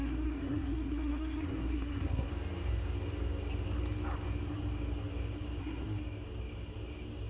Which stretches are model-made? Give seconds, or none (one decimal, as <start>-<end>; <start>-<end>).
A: 0.0-2.3; 5.6-6.0